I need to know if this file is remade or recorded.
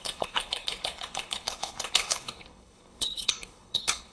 remade